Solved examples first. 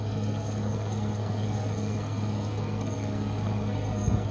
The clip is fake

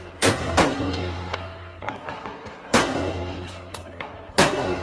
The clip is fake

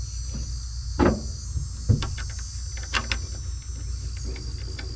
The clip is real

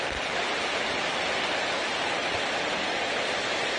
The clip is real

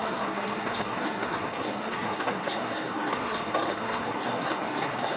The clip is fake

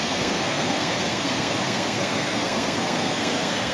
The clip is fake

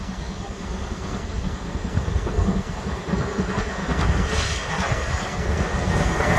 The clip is fake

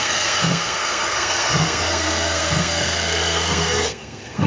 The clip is fake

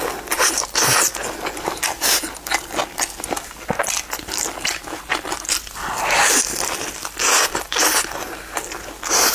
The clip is real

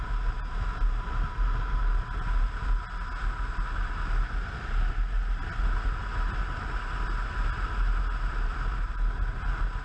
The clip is real